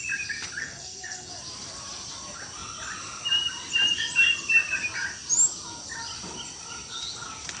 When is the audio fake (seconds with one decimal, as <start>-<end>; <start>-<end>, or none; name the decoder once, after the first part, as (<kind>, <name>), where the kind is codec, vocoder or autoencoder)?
0.6-1.3 (codec, SNAC)